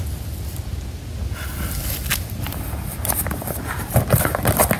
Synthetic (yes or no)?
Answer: no